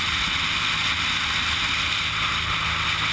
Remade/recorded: recorded